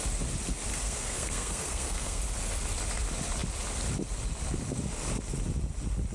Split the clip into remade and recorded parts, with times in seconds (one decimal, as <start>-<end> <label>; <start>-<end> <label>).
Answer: 0.0-0.7 recorded; 0.7-2.2 remade; 2.2-6.1 recorded